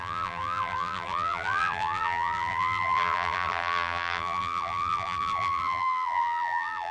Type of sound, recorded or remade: remade